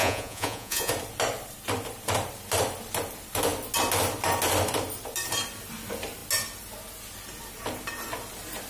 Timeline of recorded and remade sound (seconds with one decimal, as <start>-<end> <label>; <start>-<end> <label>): 0.0-0.9 remade; 0.9-8.7 recorded